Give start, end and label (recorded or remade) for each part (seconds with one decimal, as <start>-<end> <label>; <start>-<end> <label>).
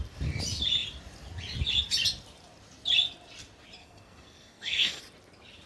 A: 0.0-3.8 recorded; 3.8-5.0 remade; 5.0-5.7 recorded